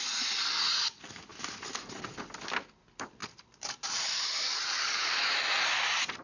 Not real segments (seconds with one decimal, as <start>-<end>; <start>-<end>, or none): 3.2-5.1